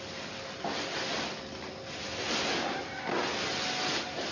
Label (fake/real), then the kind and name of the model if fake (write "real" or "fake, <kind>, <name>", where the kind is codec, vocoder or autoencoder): real